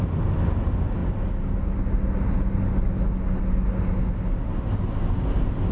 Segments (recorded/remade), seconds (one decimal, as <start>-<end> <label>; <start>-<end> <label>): 0.0-5.7 recorded